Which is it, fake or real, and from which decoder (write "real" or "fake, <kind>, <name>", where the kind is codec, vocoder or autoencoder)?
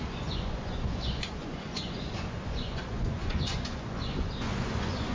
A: fake, vocoder, Vocos